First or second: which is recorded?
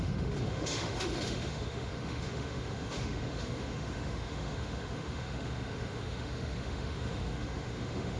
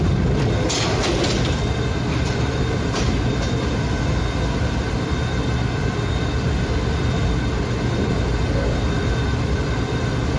second